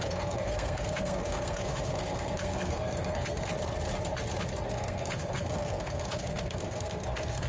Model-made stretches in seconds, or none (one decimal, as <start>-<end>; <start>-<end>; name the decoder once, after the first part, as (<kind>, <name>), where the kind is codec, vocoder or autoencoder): 0.0-3.5 (codec, SNAC); 4.7-7.5